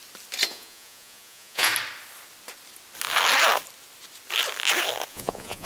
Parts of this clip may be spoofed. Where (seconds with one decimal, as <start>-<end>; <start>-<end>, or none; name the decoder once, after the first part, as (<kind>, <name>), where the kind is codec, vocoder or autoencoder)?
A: 0.5-1.7 (vocoder, Vocos); 5.1-5.6